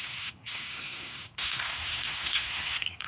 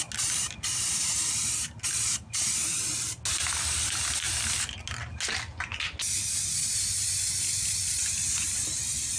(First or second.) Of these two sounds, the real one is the second